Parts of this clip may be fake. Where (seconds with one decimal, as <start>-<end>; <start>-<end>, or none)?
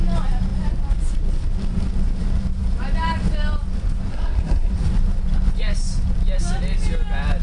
4.1-4.7